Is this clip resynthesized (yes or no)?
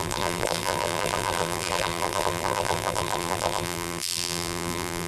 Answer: yes